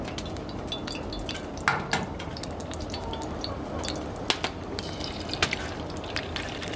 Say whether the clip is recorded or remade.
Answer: recorded